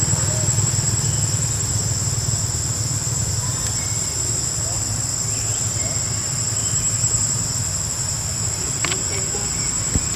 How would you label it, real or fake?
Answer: real